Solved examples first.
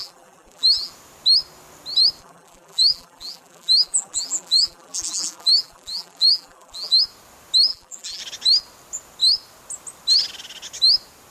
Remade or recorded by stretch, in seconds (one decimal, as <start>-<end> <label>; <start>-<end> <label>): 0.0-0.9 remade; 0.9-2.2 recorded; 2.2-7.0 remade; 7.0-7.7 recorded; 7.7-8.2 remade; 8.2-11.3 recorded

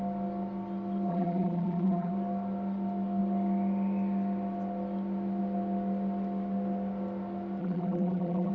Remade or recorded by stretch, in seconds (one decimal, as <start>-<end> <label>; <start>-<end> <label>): 0.0-1.1 recorded; 1.1-2.1 remade; 2.1-7.6 recorded; 7.6-8.5 remade

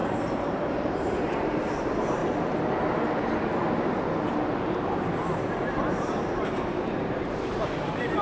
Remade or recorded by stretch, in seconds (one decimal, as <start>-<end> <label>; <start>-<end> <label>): 0.0-2.2 remade; 2.2-4.5 recorded; 4.5-8.2 remade